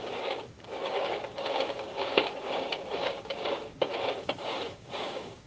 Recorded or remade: remade